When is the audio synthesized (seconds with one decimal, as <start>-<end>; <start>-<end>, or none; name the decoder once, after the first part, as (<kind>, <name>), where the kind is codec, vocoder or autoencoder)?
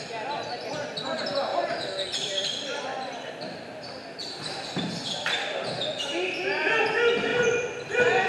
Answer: 1.5-3.3 (vocoder, BigVGAN v2); 7.3-8.3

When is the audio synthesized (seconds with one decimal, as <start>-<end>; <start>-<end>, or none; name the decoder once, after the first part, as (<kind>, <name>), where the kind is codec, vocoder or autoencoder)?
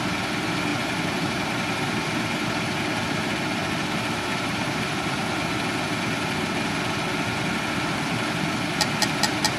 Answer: 0.7-2.8 (vocoder, BigVGAN v2); 4.3-5.2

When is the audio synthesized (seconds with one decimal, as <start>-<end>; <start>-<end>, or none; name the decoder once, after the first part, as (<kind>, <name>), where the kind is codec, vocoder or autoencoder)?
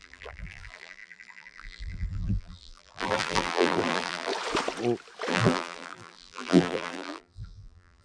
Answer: 0.0-4.3 (vocoder, BigVGAN v2); 5.3-8.0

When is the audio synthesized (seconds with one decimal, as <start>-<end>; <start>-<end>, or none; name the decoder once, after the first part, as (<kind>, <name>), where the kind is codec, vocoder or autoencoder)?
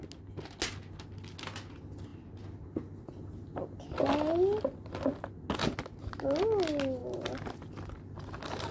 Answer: 7.0-7.7 (vocoder, BigVGAN v2)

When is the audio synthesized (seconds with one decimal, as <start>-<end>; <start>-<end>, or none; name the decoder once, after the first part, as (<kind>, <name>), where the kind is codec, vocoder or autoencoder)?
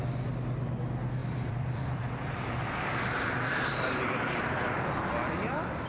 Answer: 1.2-4.7 (vocoder, BigVGAN v2)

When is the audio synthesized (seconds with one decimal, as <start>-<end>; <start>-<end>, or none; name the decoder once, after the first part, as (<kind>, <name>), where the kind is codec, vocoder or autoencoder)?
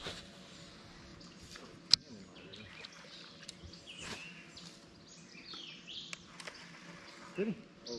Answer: 1.1-1.9 (vocoder, BigVGAN v2)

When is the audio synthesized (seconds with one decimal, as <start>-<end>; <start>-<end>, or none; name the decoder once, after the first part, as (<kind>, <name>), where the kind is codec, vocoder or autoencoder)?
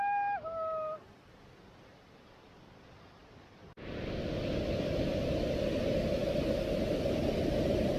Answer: 3.2-4.3 (vocoder, BigVGAN v2)